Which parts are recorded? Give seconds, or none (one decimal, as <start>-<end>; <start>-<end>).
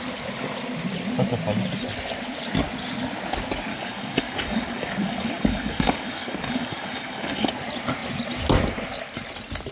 0.0-3.7; 7.5-9.7